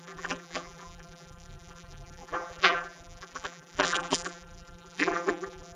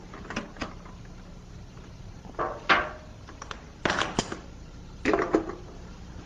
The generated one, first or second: first